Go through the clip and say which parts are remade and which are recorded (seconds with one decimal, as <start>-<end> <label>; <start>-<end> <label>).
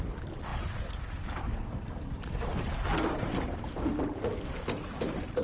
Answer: 0.0-5.4 recorded